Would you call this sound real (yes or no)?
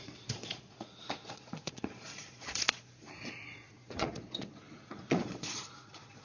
no